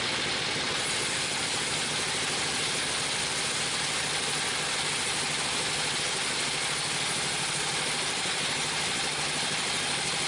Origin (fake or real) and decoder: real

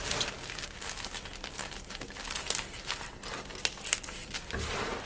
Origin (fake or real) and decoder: real